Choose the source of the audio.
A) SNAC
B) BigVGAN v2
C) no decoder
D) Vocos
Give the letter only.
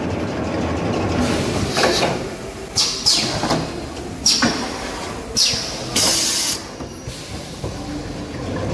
C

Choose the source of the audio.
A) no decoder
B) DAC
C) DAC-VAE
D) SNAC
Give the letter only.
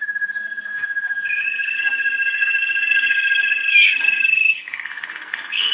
D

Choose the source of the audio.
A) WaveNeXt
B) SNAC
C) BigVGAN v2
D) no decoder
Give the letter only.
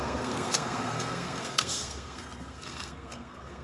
B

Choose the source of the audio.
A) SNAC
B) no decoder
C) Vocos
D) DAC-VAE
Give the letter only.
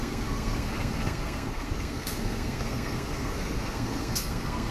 A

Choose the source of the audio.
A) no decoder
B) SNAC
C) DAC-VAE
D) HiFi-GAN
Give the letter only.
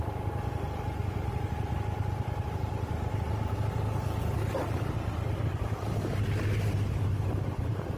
A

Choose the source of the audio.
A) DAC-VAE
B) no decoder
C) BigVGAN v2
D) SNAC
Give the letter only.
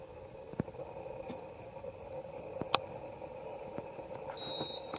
B